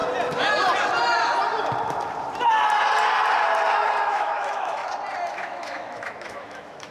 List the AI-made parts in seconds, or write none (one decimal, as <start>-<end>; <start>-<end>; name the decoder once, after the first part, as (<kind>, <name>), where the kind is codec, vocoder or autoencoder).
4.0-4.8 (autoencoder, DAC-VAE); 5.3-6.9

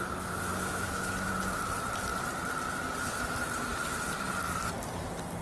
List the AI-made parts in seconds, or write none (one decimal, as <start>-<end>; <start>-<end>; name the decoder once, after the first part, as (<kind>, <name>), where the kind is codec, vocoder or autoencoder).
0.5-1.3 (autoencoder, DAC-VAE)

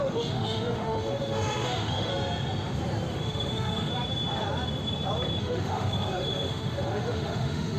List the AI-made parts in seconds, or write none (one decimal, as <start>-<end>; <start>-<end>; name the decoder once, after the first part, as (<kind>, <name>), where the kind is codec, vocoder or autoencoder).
0.0-2.1 (autoencoder, DAC-VAE); 3.1-3.9; 5.4-7.8

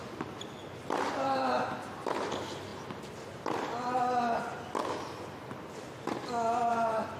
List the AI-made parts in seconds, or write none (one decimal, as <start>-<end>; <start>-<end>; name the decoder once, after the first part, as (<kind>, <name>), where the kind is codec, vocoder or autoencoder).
none